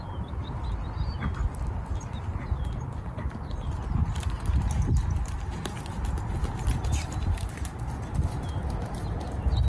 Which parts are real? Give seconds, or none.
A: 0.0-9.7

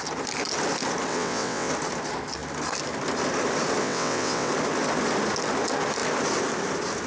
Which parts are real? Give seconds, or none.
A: 0.0-1.1; 1.7-3.8; 4.5-7.1